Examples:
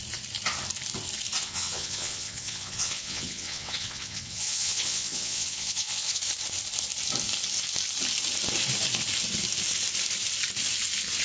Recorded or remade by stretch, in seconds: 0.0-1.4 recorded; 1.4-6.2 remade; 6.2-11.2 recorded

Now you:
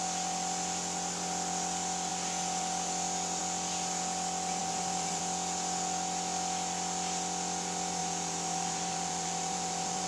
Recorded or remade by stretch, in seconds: 0.0-4.6 recorded; 4.6-5.2 remade; 5.2-8.0 recorded; 8.0-10.1 remade

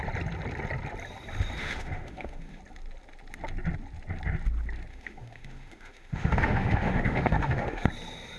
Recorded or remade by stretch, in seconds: 0.0-1.6 recorded; 1.6-2.6 remade; 2.6-4.9 recorded; 4.9-7.9 remade; 7.9-8.4 recorded

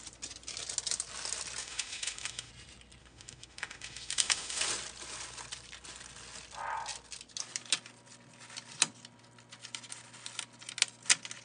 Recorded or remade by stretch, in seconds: 0.0-1.6 recorded; 1.6-2.5 remade; 2.5-3.0 recorded; 3.0-4.6 remade; 4.6-11.4 recorded

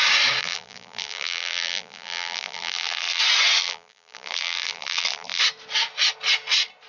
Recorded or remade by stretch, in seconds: 0.0-0.4 recorded; 0.4-3.2 remade; 3.2-3.6 recorded; 3.6-5.4 remade; 5.4-6.9 recorded

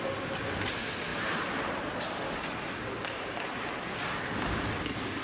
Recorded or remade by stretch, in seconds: 0.0-5.2 recorded

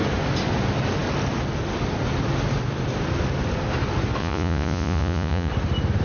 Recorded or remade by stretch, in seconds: 0.0-4.2 recorded; 4.2-5.5 remade; 5.5-6.0 recorded

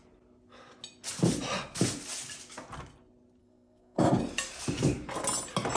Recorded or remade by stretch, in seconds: 0.0-3.4 recorded; 3.4-4.2 remade; 4.2-5.8 recorded